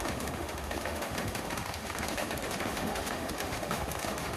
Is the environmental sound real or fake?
fake